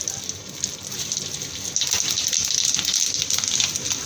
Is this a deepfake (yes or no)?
no